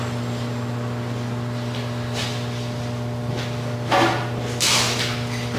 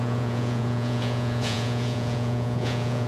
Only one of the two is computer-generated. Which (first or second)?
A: second